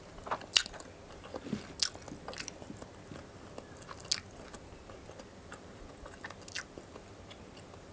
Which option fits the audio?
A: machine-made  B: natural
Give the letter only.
B